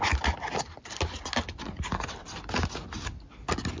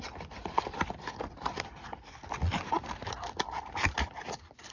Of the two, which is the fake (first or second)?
second